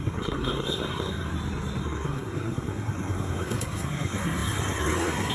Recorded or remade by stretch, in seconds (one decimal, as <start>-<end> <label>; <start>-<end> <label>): 0.0-1.3 remade; 1.3-1.8 recorded; 1.8-5.3 remade

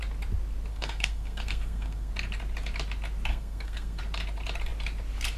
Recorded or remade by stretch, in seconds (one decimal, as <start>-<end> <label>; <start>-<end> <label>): 0.0-0.7 recorded; 0.7-2.1 remade; 2.1-3.3 recorded; 3.3-4.0 remade; 4.0-5.4 recorded

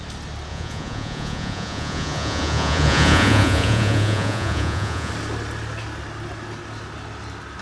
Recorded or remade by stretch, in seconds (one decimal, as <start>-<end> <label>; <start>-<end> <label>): 0.0-0.5 recorded; 0.5-5.1 remade; 5.1-7.6 recorded